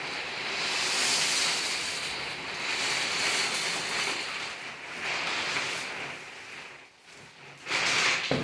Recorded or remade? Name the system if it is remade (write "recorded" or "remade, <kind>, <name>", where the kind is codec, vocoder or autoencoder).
recorded